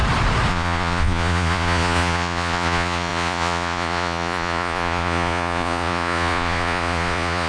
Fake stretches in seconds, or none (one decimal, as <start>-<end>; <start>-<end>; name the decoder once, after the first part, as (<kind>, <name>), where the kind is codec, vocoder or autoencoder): 0.5-7.5 (vocoder, Vocos)